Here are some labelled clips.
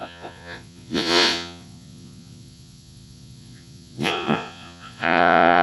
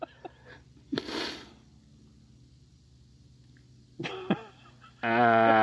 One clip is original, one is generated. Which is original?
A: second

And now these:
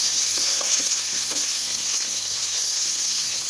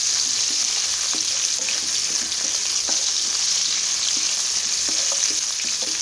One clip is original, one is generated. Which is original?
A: second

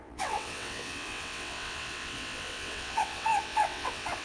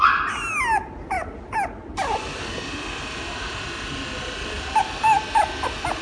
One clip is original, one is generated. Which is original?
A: second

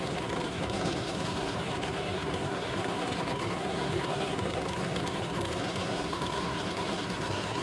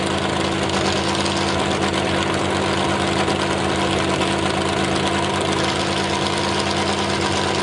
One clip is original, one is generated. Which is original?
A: second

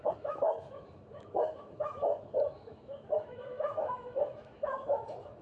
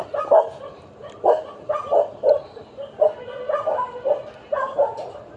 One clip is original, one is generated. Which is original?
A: second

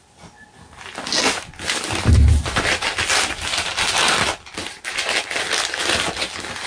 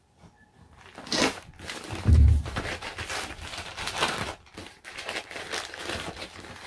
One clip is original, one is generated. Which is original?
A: first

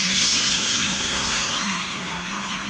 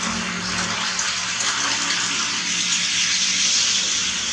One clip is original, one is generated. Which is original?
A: second